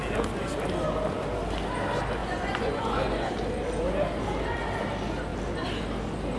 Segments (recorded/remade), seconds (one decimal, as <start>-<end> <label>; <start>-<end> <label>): 0.0-2.2 recorded; 2.2-3.3 remade; 3.3-6.4 recorded